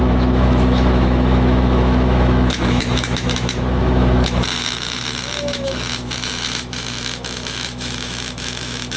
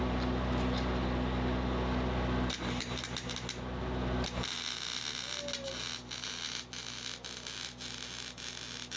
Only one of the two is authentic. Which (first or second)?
second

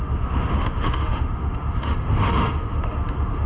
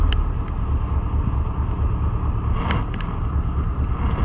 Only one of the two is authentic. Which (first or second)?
second